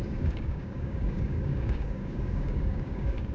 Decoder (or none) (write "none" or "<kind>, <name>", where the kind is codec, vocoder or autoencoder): codec, DAC